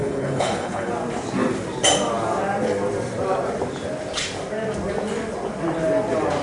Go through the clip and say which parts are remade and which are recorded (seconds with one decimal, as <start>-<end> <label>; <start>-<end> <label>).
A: 0.0-0.9 remade; 0.9-6.4 recorded